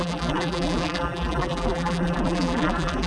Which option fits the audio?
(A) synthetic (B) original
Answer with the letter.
A